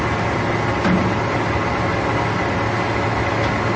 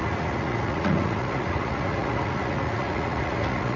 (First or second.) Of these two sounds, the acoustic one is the first